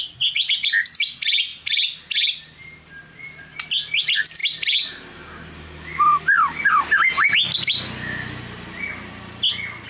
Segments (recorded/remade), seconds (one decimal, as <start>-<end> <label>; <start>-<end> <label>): 0.0-9.9 recorded